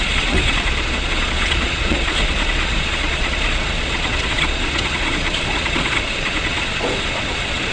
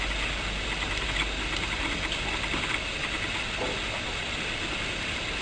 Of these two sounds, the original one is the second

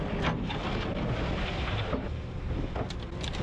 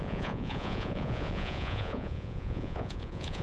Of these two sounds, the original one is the first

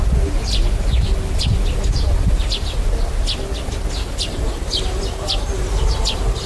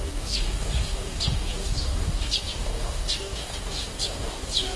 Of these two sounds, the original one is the first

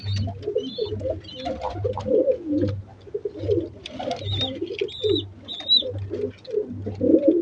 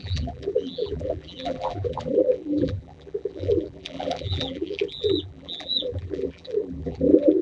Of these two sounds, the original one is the first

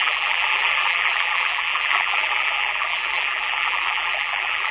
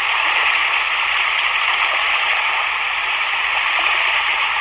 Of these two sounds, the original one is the second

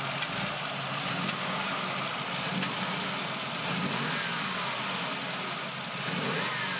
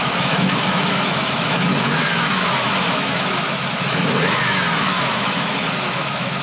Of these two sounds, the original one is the first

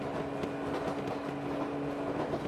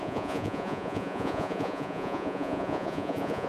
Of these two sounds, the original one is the first